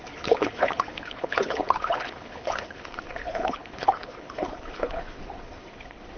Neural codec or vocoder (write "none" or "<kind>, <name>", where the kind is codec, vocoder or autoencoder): codec, HILCodec